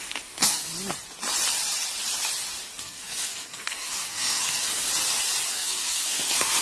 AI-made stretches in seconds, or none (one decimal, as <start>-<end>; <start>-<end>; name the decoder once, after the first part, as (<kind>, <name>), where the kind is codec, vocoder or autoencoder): 0.0-0.7 (codec, SNAC); 2.8-4.9; 5.5-6.6